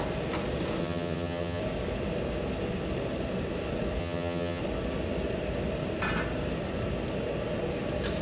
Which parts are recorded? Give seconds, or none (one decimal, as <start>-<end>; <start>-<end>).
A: 0.0-0.8; 1.6-4.0; 4.6-8.2